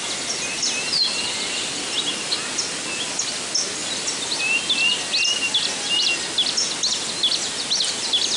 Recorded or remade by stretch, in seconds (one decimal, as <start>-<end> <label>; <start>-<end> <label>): 0.0-8.4 recorded